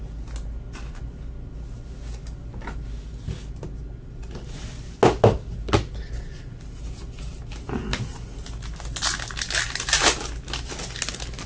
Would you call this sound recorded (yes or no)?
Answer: yes